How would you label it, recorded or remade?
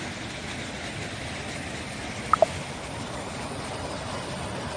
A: recorded